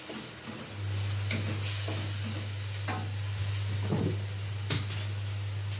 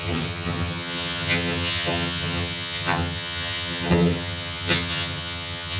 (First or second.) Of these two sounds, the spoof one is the second